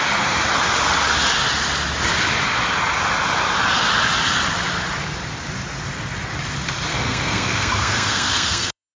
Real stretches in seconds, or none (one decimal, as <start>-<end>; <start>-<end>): 0.0-6.9